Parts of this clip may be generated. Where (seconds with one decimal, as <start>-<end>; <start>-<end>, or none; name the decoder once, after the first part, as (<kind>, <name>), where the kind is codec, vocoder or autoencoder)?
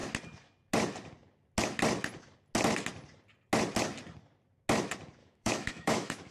5.2-6.3 (autoencoder, DAC-VAE)